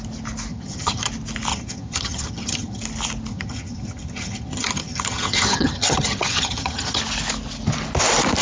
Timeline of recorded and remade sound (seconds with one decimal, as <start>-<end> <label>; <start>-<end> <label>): 0.0-0.5 recorded; 0.5-1.1 remade; 1.1-1.5 recorded; 1.5-2.8 remade; 2.8-3.3 recorded; 3.3-7.0 remade; 7.0-8.4 recorded

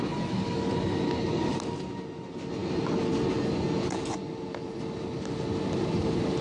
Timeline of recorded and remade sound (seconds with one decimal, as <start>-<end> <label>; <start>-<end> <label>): 0.0-6.4 recorded

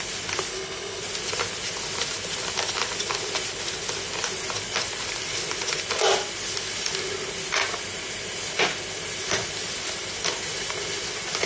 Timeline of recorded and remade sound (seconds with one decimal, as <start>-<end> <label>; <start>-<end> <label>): 0.0-0.5 recorded; 0.5-1.0 remade; 1.0-11.4 recorded

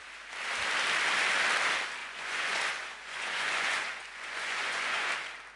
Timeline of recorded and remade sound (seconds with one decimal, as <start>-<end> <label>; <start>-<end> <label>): 0.0-2.0 recorded; 2.0-5.1 remade; 5.1-5.6 recorded

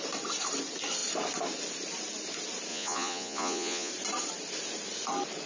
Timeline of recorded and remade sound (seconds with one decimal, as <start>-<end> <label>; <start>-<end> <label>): 0.0-2.7 recorded; 2.7-3.9 remade; 3.9-5.5 recorded

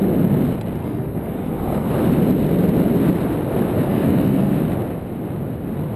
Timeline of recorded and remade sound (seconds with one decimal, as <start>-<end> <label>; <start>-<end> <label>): 0.0-0.8 recorded; 0.8-1.9 remade; 1.9-3.9 recorded; 3.9-4.6 remade; 4.6-6.0 recorded